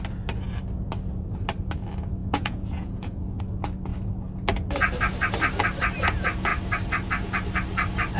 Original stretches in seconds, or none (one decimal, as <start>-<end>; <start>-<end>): 0.0-2.2; 3.4-8.2